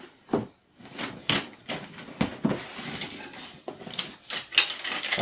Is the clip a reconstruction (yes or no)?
no